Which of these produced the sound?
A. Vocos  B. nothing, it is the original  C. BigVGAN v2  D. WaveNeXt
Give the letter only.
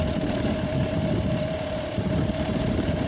C